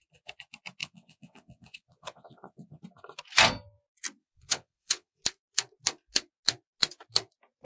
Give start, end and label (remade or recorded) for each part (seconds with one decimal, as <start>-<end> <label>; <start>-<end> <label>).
0.0-0.8 recorded; 0.8-2.8 remade; 2.8-4.2 recorded; 4.2-5.2 remade; 5.2-7.7 recorded